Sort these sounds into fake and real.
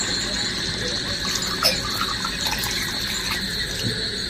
real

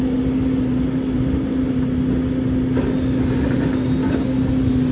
real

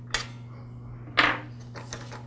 real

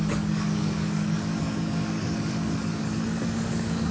fake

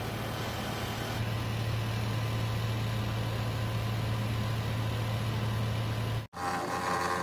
real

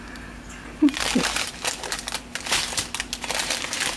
real